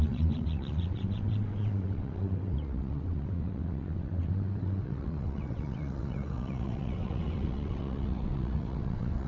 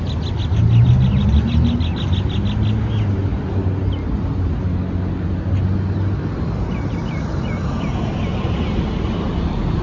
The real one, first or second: second